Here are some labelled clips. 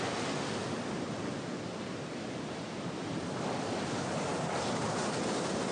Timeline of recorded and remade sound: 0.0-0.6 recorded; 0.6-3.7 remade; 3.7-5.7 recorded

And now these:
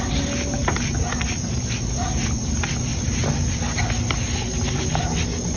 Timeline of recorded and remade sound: 0.0-5.6 recorded